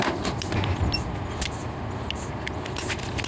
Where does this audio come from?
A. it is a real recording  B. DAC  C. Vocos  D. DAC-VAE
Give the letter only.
A